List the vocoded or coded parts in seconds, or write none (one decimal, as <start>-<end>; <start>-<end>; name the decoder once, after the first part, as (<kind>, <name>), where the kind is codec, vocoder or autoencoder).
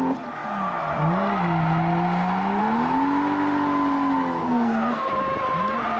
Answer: 4.4-5.1 (codec, SNAC)